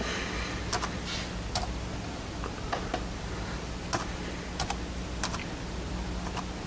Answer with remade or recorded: recorded